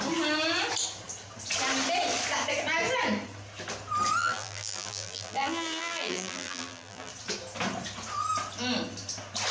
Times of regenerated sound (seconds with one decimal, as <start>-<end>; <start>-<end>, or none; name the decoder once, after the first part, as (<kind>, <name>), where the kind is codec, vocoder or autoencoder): 4.2-7.1 (vocoder, BigVGAN v2)